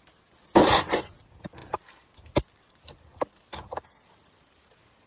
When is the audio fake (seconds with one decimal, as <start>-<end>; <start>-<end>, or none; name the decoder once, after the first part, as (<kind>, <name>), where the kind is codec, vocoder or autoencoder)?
1.6-2.8 (vocoder, BigVGAN v2)